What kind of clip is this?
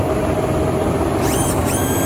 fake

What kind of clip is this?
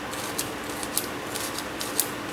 real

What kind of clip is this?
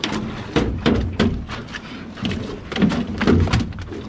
real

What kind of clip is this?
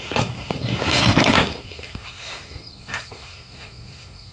fake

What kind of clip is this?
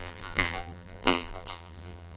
fake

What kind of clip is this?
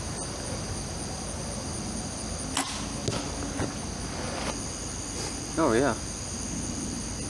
real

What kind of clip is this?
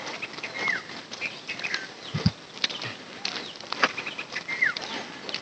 fake